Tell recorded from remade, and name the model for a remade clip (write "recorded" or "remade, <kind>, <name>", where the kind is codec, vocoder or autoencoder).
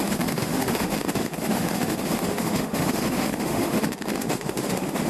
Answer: remade, autoencoder, DAC-VAE